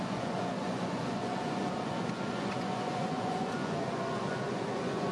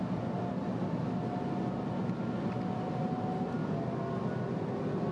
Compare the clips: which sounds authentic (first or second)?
second